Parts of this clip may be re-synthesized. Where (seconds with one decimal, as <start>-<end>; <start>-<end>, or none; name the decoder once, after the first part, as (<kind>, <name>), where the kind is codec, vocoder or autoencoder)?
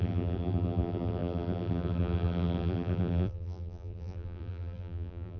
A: 0.0-5.4 (vocoder, BigVGAN v2)